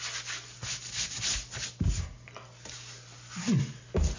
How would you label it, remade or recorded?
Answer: recorded